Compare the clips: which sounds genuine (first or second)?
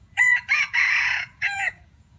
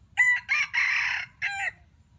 second